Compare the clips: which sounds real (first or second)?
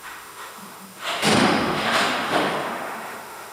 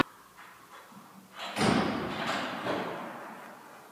second